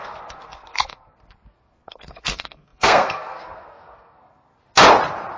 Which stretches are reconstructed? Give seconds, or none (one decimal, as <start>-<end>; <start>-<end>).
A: 0.0-4.5